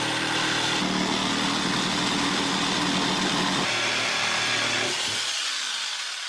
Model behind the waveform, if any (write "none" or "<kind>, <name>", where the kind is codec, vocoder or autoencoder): none